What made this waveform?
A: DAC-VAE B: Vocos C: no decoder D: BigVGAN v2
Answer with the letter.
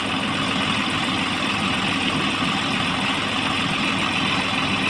C